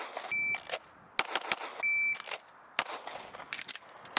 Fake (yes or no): no